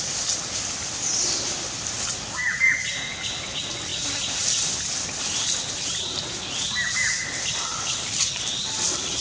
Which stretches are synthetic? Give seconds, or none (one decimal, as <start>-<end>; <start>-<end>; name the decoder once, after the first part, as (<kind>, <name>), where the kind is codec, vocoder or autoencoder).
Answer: none